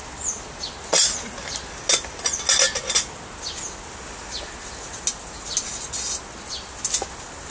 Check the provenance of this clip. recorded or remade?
recorded